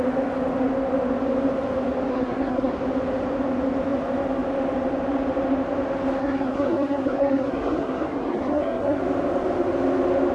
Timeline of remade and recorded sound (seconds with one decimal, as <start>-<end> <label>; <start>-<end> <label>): 0.0-2.1 recorded; 2.1-2.7 remade; 2.7-6.2 recorded; 6.2-9.0 remade; 9.0-10.3 recorded